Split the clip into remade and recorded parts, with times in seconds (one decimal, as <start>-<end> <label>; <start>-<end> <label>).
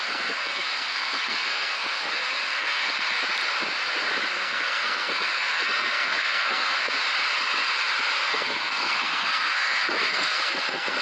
0.0-3.2 remade; 3.2-4.3 recorded; 4.3-7.0 remade; 7.0-8.3 recorded; 8.3-11.0 remade